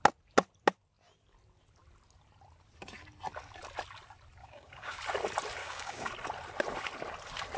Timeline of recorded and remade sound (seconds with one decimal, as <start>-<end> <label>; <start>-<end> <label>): 0.0-4.4 recorded; 4.4-5.0 remade; 5.0-5.6 recorded; 5.6-6.1 remade; 6.1-7.6 recorded